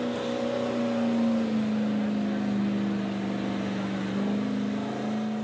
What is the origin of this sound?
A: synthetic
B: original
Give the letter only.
B